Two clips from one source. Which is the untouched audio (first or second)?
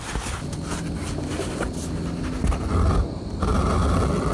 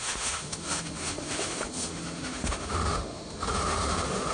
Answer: first